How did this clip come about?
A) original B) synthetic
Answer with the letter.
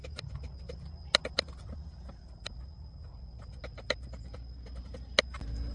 A